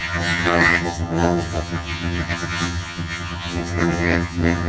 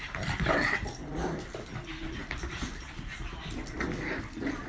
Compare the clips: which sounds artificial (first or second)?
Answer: first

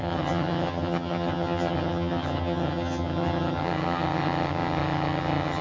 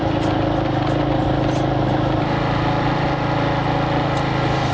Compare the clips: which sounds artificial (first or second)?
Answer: first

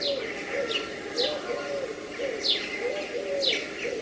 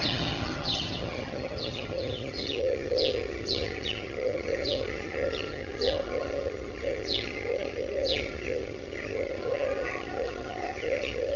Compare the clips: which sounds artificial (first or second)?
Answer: second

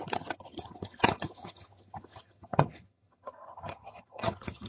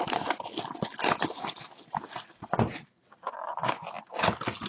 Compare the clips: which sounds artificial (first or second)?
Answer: first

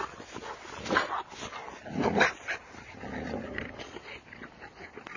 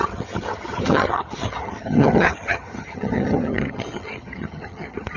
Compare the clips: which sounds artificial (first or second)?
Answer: second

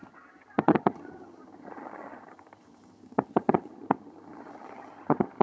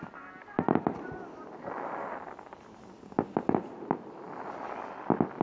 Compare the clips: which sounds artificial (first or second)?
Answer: first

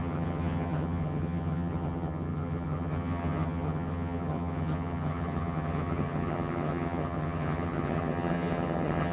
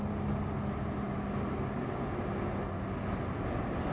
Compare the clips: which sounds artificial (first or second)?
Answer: first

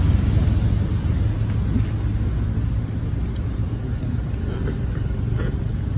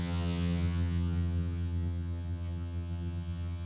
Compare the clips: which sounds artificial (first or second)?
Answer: second